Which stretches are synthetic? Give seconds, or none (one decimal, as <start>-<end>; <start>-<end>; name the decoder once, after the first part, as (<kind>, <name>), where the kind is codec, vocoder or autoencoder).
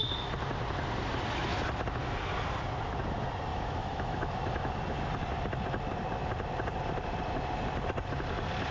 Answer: 3.5-4.7 (autoencoder, DAC-VAE)